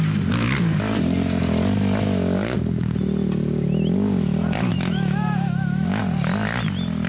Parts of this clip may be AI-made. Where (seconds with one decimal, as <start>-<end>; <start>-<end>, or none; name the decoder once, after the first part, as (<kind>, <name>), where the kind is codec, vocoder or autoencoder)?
4.7-6.0 (autoencoder, DAC-VAE)

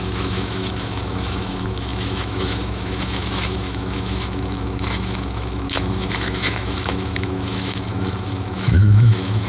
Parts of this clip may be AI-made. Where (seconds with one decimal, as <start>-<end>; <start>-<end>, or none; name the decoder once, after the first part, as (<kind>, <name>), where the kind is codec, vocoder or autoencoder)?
0.0-9.5 (autoencoder, DAC-VAE)

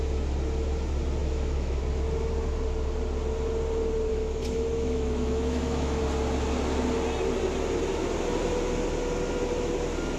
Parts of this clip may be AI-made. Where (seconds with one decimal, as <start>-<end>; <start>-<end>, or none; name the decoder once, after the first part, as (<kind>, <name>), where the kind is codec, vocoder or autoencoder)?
1.2-1.8 (autoencoder, DAC-VAE); 4.1-6.0

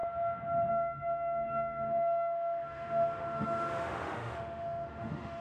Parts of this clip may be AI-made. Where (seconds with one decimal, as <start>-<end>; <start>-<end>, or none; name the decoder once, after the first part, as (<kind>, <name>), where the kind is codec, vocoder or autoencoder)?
0.7-5.4 (autoencoder, DAC-VAE)

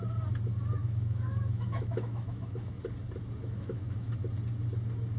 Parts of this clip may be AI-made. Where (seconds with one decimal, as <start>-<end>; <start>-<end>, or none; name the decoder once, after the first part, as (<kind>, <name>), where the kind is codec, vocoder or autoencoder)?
0.8-2.8 (autoencoder, DAC-VAE); 3.4-4.1

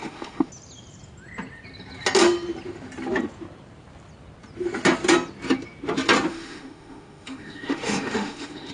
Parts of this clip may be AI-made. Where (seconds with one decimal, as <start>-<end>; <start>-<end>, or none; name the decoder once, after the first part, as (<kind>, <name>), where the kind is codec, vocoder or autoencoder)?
0.0-0.5 (autoencoder, DAC-VAE); 6.3-8.7

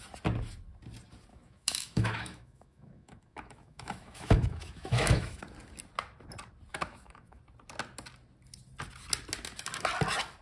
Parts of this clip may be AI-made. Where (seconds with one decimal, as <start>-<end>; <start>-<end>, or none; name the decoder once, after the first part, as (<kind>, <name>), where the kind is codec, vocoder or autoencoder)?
1.3-5.4 (autoencoder, DAC-VAE); 6.7-7.4